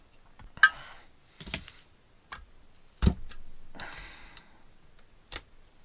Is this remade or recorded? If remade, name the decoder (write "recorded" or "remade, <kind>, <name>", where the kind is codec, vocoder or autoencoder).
recorded